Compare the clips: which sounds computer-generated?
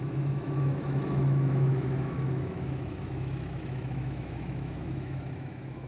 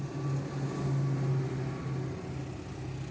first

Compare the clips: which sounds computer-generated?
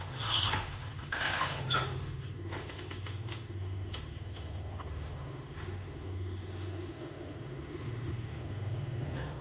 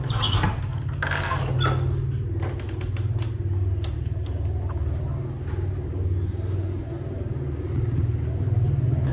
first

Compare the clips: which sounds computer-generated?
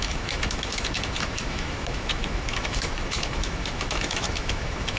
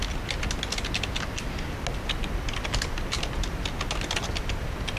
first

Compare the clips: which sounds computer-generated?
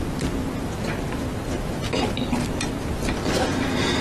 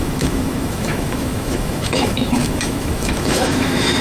second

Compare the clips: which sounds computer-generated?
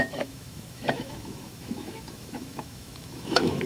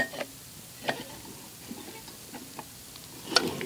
first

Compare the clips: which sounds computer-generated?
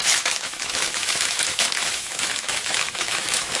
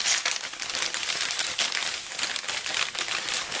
first